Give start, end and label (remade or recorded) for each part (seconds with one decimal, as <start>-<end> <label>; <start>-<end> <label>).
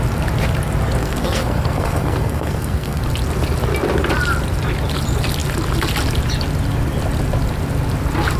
0.0-1.0 recorded; 1.0-3.0 remade; 3.0-8.4 recorded